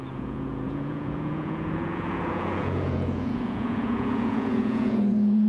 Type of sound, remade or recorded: remade